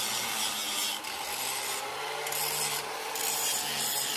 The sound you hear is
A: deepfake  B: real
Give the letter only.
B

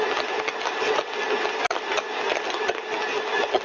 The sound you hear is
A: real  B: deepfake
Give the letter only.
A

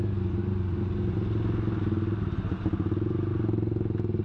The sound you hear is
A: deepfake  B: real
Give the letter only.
B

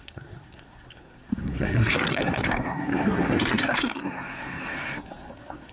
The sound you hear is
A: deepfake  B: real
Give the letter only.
A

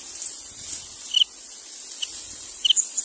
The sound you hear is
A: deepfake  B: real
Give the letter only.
B